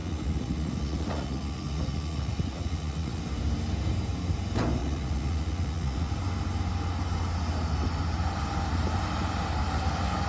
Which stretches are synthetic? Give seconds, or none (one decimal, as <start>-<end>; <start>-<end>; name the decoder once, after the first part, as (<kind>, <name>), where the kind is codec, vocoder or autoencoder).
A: 0.0-3.2 (vocoder, Vocos); 4.8-6.1